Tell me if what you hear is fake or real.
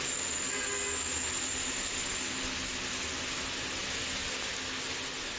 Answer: real